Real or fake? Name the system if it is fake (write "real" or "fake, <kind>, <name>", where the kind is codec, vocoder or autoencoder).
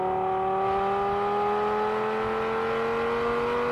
real